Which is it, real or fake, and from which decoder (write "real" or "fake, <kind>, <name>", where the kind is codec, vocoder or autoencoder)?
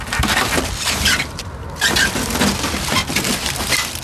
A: fake, vocoder, BigVGAN v2